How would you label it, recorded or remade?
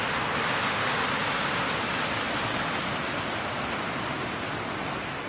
recorded